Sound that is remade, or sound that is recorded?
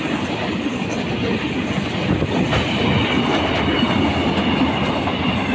recorded